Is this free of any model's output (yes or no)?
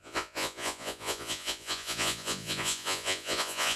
no